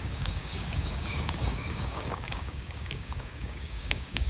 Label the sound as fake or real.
fake